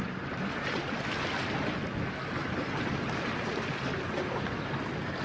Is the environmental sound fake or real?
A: real